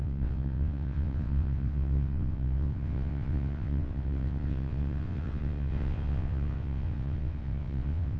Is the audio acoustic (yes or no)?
no